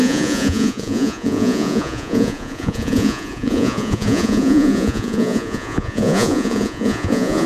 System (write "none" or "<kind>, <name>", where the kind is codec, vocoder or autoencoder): vocoder, Vocos